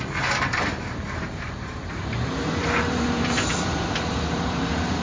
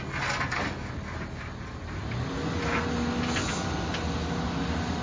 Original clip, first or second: second